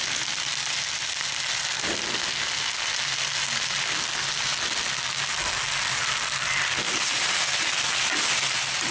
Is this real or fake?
real